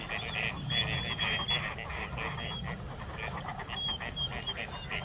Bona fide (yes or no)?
yes